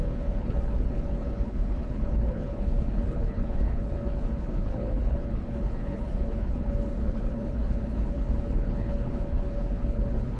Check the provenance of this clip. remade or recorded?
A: remade